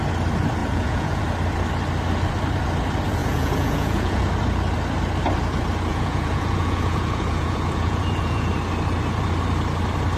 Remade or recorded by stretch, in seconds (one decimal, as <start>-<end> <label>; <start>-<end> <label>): 0.0-0.6 recorded; 0.6-1.2 remade; 1.2-3.2 recorded; 3.2-4.3 remade; 4.3-5.9 recorded; 5.9-8.5 remade; 8.5-10.2 recorded